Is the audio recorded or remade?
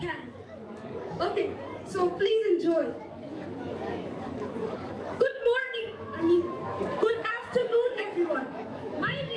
remade